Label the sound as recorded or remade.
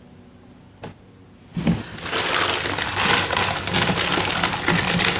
recorded